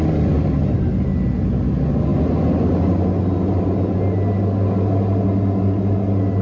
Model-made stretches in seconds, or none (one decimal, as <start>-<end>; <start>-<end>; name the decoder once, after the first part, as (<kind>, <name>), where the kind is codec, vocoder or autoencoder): none